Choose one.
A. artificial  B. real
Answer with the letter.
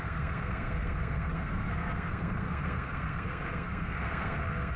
A